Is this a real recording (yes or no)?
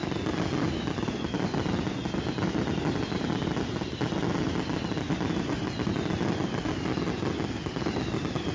yes